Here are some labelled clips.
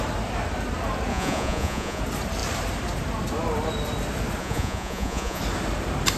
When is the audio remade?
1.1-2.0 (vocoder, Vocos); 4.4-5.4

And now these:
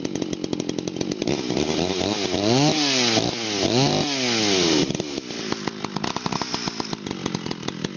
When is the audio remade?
none